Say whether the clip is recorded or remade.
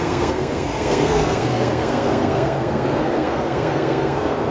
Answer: remade